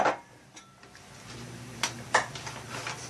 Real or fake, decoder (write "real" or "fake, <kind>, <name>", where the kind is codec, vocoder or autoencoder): real